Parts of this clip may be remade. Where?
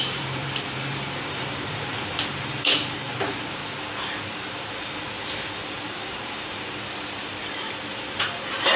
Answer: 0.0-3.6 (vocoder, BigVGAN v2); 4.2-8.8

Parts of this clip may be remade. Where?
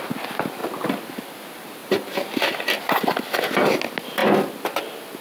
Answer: 1.8-2.4 (vocoder, BigVGAN v2)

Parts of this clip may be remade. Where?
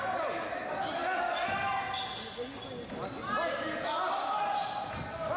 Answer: none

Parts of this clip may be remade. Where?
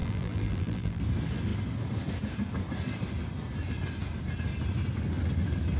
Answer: 0.0-1.0 (vocoder, BigVGAN v2)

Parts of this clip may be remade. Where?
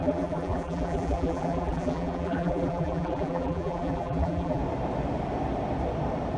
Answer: 0.0-4.6 (vocoder, BigVGAN v2)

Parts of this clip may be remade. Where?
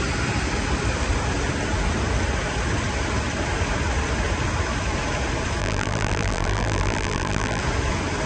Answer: 5.6-7.6 (vocoder, BigVGAN v2)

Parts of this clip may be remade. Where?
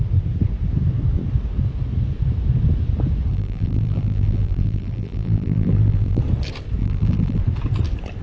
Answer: 3.3-6.2 (vocoder, BigVGAN v2); 6.8-7.4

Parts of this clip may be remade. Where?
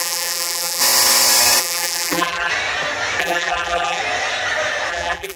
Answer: 0.0-0.8 (vocoder, BigVGAN v2); 1.6-2.5; 3.2-4.0; 4.9-5.4